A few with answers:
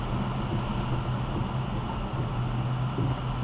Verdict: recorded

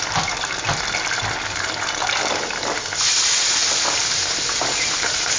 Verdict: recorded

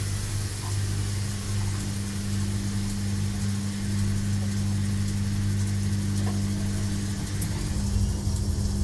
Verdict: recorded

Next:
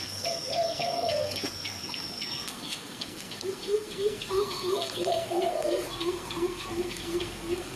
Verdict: remade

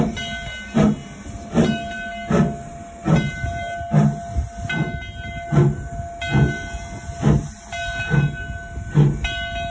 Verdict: recorded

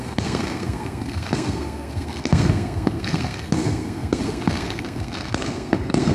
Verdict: remade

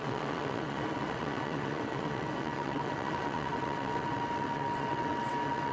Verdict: remade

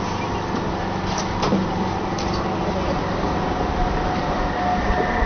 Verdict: recorded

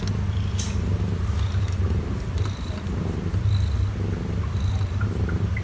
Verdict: recorded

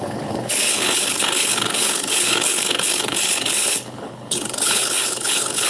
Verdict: remade